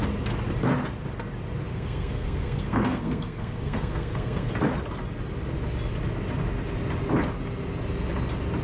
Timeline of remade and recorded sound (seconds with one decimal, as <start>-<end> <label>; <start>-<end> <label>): 0.0-1.7 recorded; 1.7-4.5 remade; 4.5-8.6 recorded